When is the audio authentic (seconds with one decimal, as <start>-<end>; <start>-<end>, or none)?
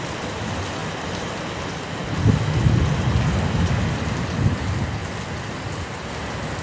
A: 0.0-6.6